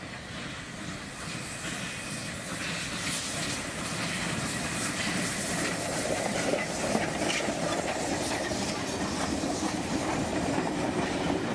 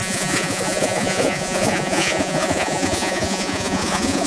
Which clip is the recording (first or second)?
first